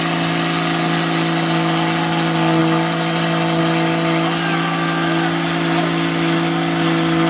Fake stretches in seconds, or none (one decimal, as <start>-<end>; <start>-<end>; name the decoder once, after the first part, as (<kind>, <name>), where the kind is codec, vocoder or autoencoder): none